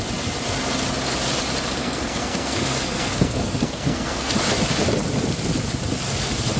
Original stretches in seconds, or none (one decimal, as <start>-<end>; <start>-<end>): 0.0-1.8; 4.3-6.6